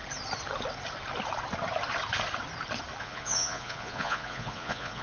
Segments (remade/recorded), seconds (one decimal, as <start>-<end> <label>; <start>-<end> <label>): 0.0-3.0 recorded; 3.0-5.0 remade

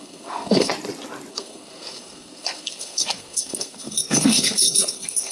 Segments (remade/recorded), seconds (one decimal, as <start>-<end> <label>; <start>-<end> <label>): 0.0-0.7 remade; 0.7-1.3 recorded; 1.3-5.3 remade

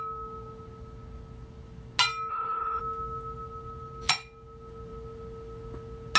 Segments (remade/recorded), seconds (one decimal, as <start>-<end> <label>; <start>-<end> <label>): 0.0-2.3 recorded; 2.3-2.8 remade; 2.8-6.2 recorded

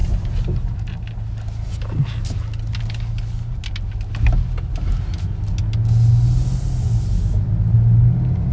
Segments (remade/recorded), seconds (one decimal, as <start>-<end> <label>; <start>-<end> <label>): 0.0-8.5 recorded

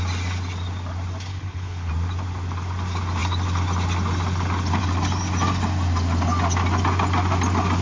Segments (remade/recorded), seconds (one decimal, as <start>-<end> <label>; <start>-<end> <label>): 0.0-1.3 recorded; 1.3-1.9 remade; 1.9-7.8 recorded

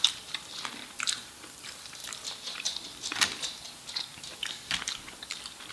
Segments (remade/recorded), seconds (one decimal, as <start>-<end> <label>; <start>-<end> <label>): 0.0-2.0 remade; 2.0-5.7 recorded

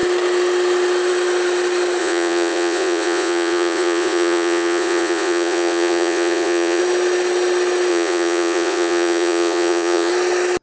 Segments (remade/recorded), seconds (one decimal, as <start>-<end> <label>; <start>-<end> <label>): 0.0-2.0 recorded; 2.0-6.8 remade; 6.8-7.9 recorded; 7.9-10.1 remade; 10.1-10.6 recorded

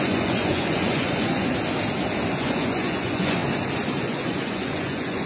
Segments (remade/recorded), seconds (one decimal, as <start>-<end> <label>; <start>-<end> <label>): 0.0-1.5 remade; 1.5-2.3 recorded; 2.3-3.4 remade; 3.4-4.0 recorded; 4.0-5.3 remade